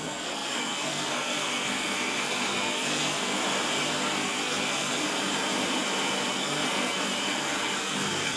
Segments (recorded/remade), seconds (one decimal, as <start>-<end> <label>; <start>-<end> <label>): 0.0-3.4 remade; 3.4-3.9 recorded; 3.9-5.0 remade; 5.0-6.3 recorded; 6.3-8.4 remade